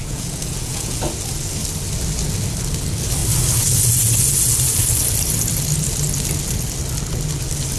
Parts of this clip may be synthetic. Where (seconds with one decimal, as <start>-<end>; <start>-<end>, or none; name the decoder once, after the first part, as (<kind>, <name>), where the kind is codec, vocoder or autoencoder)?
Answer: 0.0-1.0 (vocoder, Vocos)